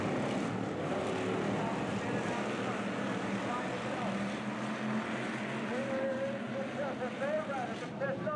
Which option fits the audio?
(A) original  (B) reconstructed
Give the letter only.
A